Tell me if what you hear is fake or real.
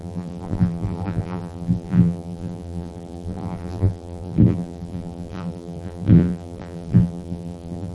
fake